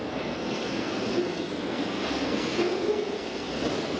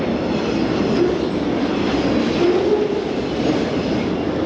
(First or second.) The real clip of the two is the second